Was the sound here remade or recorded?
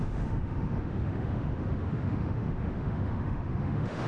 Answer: remade